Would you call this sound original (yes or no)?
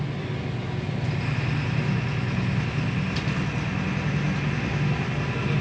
yes